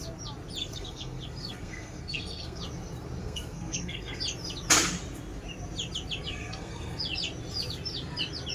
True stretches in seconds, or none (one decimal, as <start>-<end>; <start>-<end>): 0.0-0.6; 2.6-3.2; 4.2-6.3; 7.0-8.5